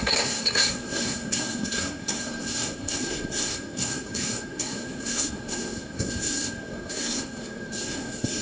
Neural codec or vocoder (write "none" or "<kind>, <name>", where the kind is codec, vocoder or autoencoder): codec, SNAC